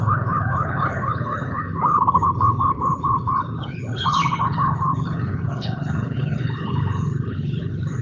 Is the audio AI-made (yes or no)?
yes